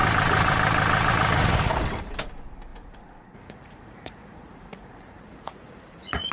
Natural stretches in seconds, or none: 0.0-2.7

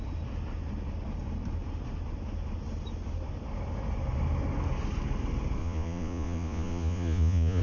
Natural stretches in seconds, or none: 0.0-5.6

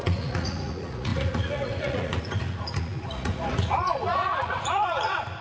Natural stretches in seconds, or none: none

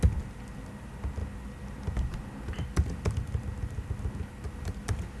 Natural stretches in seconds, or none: 0.0-5.2